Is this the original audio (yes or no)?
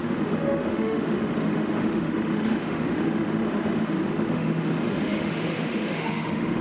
no